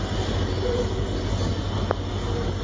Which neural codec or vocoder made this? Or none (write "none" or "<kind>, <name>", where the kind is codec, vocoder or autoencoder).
none